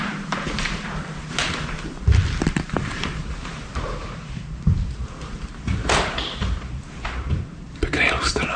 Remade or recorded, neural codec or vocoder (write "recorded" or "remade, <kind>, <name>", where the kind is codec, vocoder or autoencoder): remade, vocoder, BigVGAN v2